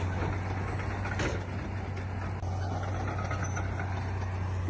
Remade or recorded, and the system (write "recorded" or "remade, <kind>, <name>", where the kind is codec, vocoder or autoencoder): recorded